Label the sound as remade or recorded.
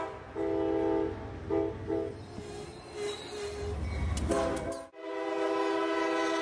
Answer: recorded